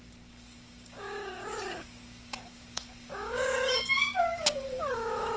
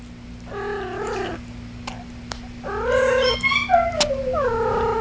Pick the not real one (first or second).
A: first